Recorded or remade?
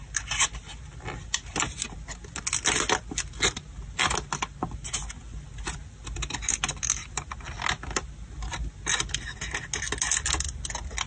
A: recorded